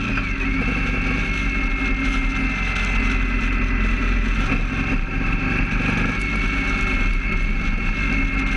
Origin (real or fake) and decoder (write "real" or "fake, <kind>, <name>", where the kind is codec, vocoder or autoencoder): real